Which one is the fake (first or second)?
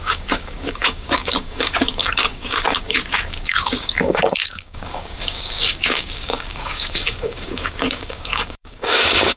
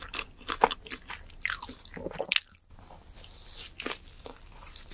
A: first